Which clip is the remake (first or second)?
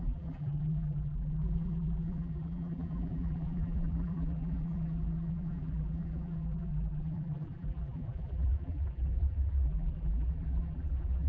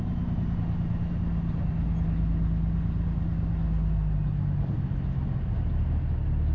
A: first